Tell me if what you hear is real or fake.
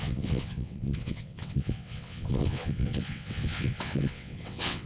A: fake